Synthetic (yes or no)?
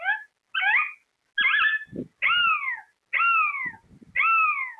no